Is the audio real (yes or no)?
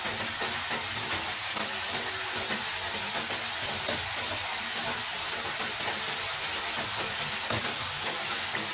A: yes